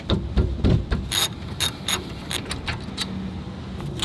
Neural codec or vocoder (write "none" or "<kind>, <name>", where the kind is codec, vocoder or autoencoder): none